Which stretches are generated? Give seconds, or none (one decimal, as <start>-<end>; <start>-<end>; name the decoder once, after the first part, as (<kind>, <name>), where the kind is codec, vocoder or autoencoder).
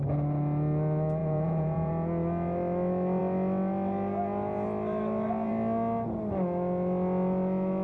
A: 1.2-1.9 (vocoder, Vocos)